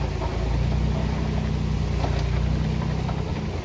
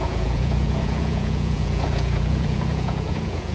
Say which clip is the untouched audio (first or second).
first